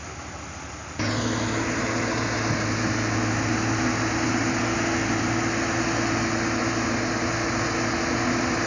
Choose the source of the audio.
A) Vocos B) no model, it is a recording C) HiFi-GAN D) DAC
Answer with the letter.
B